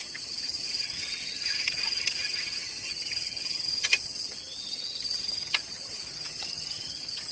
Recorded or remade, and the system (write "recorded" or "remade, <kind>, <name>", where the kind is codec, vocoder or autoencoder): remade, vocoder, HiFi-GAN